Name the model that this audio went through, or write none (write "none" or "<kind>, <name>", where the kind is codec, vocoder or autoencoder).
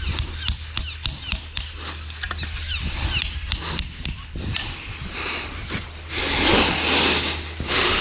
none